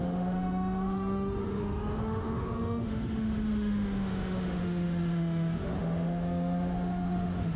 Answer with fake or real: fake